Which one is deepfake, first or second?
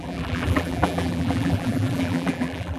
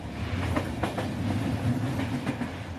first